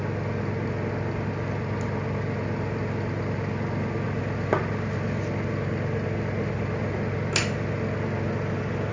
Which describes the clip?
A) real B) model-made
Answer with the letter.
A